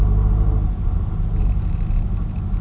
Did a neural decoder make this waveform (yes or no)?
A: no